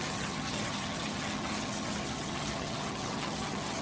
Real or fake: fake